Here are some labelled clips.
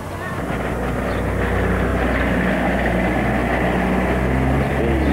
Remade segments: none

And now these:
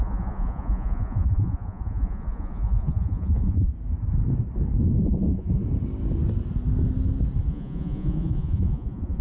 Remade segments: 0.0-3.7 (vocoder, Vocos); 5.0-5.6; 7.5-9.2